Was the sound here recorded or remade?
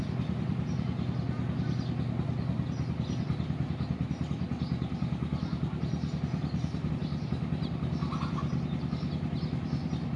recorded